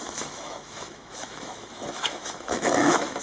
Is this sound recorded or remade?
remade